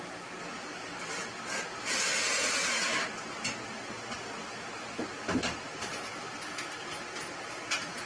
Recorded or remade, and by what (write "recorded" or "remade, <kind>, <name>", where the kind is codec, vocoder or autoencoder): recorded